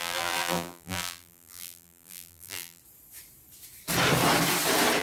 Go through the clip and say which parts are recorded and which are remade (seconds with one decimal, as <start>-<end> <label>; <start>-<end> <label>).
0.0-2.8 remade; 2.8-5.0 recorded